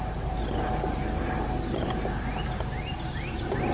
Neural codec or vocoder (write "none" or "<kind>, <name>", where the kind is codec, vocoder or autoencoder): none